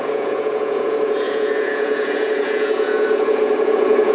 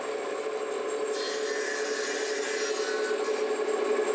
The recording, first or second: second